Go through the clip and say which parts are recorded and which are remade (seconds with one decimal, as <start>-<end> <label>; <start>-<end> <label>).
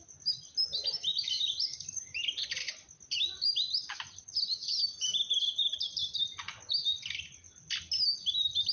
0.0-8.7 recorded